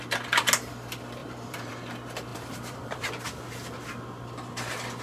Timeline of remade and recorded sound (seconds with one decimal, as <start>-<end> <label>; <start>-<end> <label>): 0.0-1.2 recorded; 1.2-1.7 remade; 1.7-2.3 recorded; 2.3-3.1 remade; 3.1-5.0 recorded